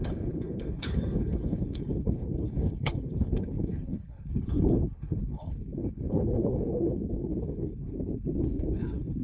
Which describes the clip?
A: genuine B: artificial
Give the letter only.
B